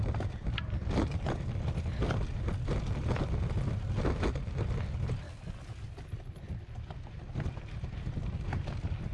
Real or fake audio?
real